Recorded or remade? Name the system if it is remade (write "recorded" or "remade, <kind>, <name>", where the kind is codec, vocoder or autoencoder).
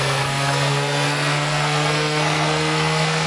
remade, codec, SNAC